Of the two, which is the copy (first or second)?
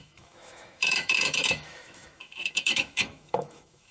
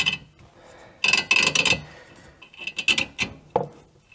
first